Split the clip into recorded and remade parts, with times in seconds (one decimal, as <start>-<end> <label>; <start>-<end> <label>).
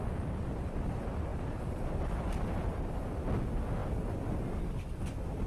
0.0-5.5 recorded